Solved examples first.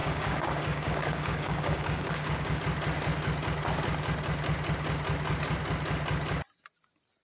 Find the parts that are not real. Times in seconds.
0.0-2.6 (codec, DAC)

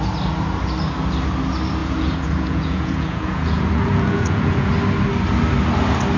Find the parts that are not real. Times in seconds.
1.8-4.7 (vocoder, Vocos)

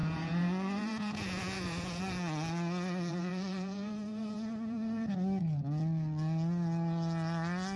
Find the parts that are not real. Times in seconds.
0.0-2.0 (vocoder, Vocos); 3.1-5.1

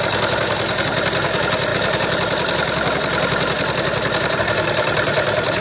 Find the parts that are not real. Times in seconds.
none